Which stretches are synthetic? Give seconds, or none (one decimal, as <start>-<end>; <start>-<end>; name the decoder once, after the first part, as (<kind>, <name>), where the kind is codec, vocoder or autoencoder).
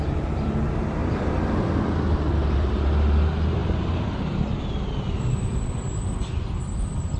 0.0-7.2 (vocoder, BigVGAN v2)